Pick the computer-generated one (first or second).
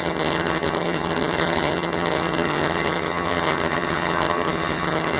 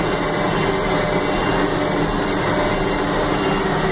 first